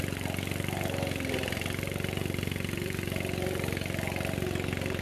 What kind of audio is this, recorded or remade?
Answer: recorded